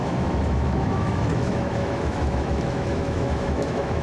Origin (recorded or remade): remade